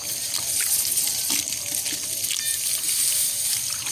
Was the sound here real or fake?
real